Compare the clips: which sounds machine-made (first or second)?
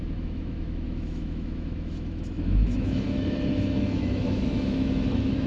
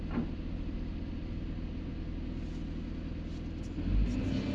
first